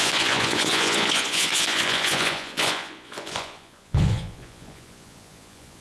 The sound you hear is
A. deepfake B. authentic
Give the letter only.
A